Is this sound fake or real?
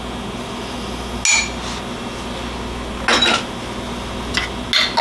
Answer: real